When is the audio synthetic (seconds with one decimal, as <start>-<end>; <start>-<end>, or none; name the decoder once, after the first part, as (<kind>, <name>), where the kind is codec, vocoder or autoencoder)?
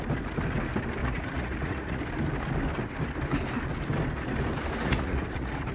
1.0-2.0 (vocoder, Vocos); 4.8-5.7